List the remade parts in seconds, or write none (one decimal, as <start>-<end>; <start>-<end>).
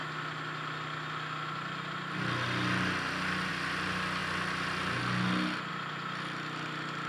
none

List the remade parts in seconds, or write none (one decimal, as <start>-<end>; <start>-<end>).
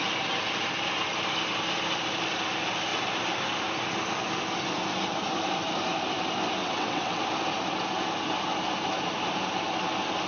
6.6-7.2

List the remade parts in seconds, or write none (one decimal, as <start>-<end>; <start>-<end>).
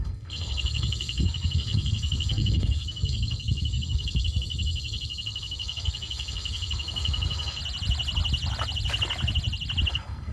0.0-7.6; 9.9-10.3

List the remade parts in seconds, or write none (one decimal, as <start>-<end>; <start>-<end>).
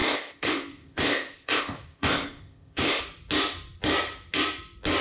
0.0-3.0